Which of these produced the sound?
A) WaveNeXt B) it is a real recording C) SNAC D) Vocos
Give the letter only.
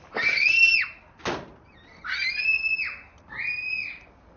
B